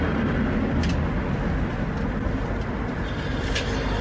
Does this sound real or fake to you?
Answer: real